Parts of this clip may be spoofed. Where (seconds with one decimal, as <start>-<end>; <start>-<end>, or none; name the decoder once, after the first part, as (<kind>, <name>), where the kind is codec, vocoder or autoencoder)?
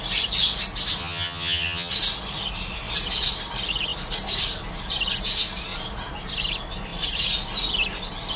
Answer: 1.0-1.9 (vocoder, HiFi-GAN)